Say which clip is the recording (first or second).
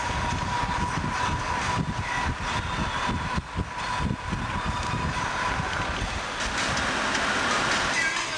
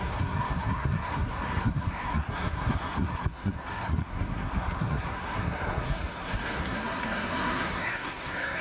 first